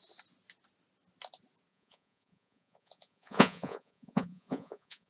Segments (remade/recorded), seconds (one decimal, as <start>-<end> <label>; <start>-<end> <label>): 0.0-1.7 recorded; 1.7-5.1 remade